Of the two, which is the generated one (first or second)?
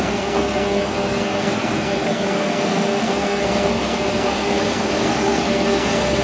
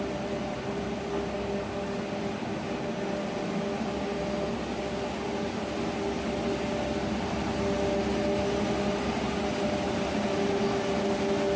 first